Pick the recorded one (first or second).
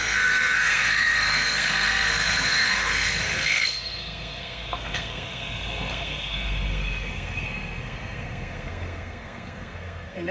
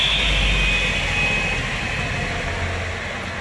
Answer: second